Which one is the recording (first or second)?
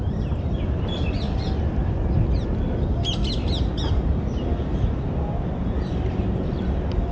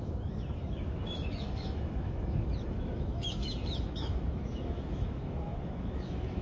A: first